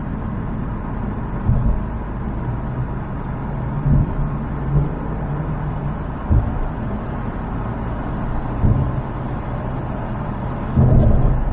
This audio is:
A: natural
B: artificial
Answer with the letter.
A